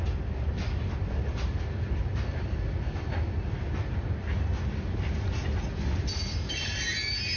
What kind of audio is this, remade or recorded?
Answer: recorded